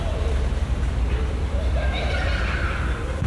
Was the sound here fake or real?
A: real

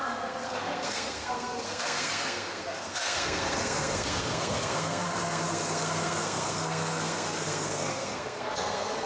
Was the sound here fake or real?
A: fake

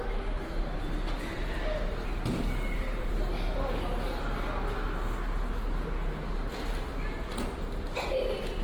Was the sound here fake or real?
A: real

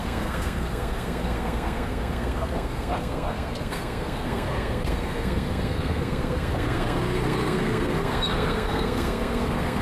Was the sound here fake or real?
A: fake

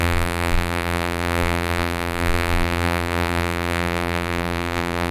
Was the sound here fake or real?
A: fake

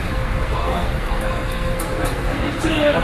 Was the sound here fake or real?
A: fake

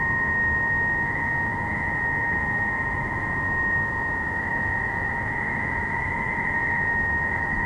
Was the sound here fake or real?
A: fake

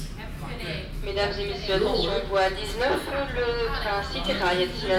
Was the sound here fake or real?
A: real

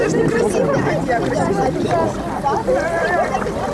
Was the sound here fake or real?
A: real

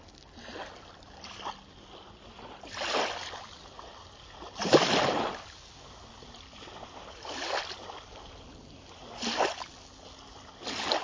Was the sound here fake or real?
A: real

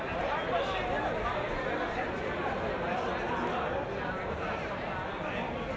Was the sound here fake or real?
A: real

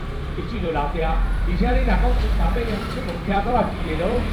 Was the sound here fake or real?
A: fake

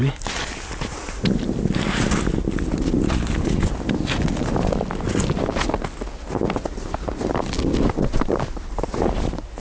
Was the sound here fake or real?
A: real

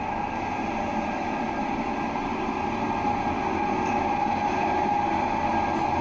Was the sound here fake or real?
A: real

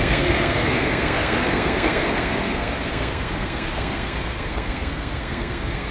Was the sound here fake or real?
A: fake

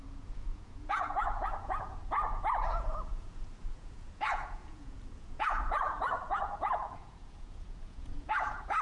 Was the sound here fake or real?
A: fake